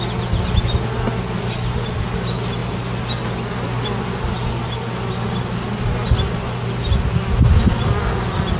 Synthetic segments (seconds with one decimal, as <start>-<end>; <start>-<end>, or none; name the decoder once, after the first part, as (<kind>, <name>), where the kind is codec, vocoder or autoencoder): none